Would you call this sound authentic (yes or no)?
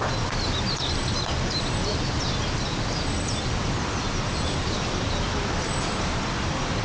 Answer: yes